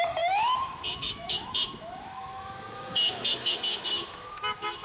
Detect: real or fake fake